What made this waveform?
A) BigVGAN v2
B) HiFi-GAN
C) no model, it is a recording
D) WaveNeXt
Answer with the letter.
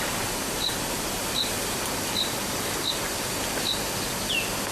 C